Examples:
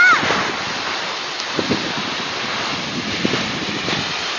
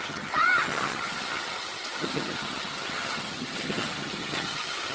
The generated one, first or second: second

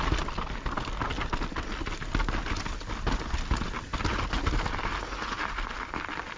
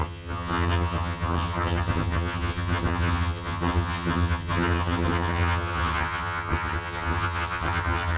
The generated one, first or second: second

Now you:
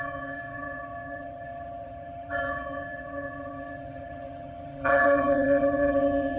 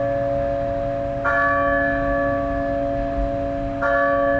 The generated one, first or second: first